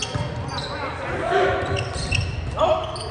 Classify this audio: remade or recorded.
recorded